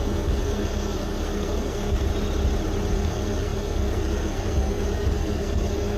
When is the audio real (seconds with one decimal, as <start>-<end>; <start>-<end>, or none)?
2.1-2.9

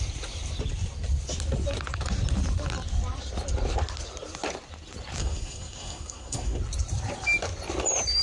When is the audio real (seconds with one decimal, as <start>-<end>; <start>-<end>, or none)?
0.0-5.2; 6.6-8.2

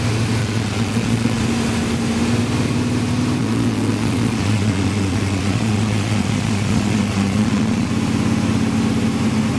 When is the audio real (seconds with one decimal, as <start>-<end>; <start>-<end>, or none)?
0.0-0.4; 1.4-3.4; 7.9-9.6

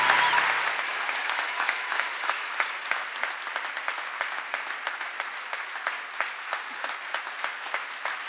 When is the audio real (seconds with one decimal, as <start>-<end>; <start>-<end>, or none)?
0.0-1.2; 2.5-8.3

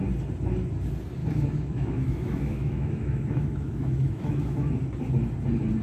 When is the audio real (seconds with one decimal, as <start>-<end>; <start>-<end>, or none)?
0.0-1.2; 4.7-5.8

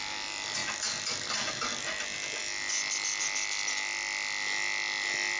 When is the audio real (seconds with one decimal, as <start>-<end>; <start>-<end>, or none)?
0.0-5.4